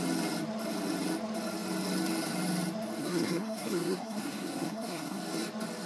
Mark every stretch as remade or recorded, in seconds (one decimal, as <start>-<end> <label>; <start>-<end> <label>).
0.0-3.0 recorded; 3.0-5.2 remade; 5.2-5.9 recorded